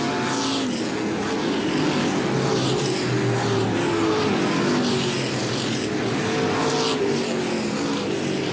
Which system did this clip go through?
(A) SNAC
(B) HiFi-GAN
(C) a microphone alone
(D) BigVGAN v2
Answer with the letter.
C